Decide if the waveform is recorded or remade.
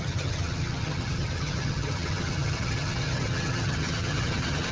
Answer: remade